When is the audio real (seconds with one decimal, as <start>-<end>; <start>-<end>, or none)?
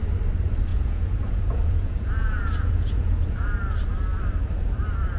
0.0-0.7; 3.5-5.2